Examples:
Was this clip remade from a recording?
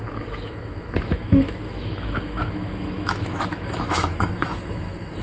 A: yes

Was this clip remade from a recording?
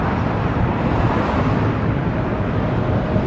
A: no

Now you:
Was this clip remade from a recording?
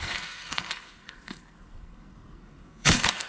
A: yes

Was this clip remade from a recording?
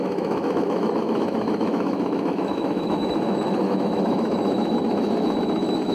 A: yes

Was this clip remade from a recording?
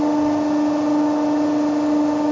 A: no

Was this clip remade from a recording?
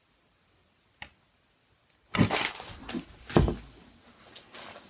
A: no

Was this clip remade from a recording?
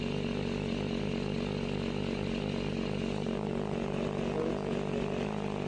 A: no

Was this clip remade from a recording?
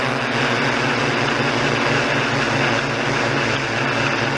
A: no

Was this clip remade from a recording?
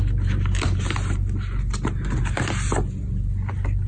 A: no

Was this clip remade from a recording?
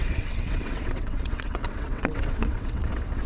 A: yes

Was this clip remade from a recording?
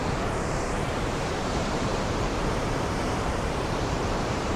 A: yes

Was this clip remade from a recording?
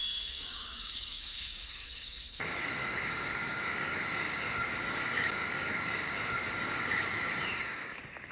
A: yes